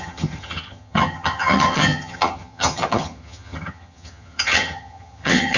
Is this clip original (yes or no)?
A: no